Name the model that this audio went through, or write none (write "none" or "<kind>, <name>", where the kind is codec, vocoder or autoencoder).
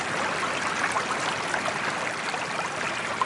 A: none